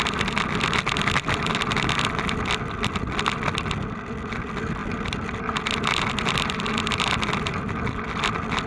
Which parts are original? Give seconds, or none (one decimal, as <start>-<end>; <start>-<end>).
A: 0.0-8.7